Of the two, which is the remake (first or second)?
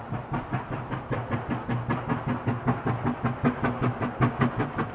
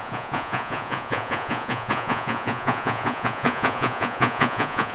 second